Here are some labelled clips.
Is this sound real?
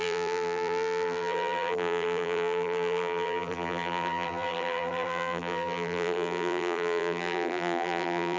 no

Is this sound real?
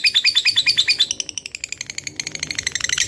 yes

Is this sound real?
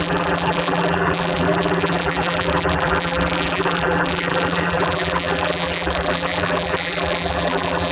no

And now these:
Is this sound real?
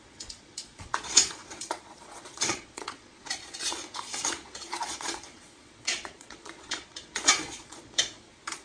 no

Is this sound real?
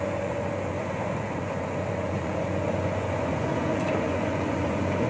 no